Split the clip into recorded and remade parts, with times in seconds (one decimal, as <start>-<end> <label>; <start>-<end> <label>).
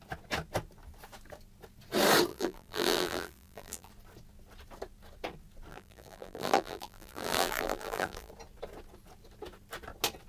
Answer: 0.0-2.3 recorded; 2.3-3.9 remade; 3.9-5.7 recorded; 5.7-8.3 remade; 8.3-10.3 recorded